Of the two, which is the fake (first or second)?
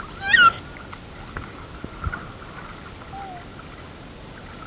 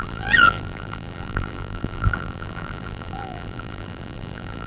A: second